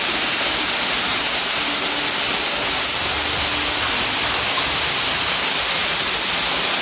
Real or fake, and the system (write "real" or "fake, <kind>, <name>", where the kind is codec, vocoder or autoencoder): real